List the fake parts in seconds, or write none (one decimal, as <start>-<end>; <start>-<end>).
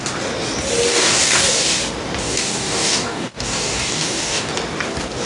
0.9-1.8; 2.2-4.5